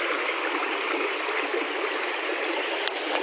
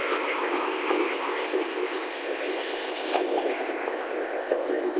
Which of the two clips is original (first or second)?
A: first